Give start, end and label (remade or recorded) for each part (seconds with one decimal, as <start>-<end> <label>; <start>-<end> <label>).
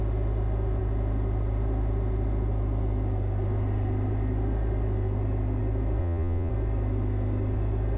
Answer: 0.0-6.0 recorded; 6.0-6.5 remade; 6.5-8.0 recorded